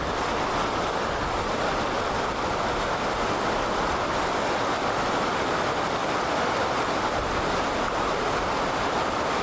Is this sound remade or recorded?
recorded